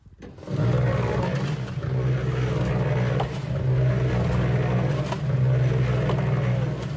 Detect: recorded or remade recorded